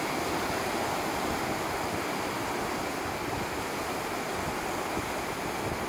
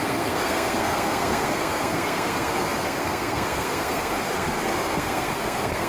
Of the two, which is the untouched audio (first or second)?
first